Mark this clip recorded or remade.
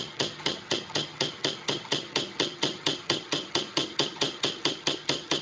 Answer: remade